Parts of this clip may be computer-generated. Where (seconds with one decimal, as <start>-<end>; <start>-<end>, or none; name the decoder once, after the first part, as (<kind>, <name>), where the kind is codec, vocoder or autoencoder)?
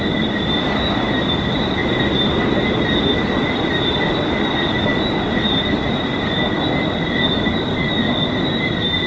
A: 1.8-2.4 (vocoder, BigVGAN v2); 4.9-6.4